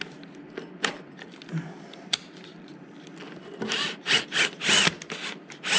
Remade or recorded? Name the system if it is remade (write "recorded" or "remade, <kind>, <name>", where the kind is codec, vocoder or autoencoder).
recorded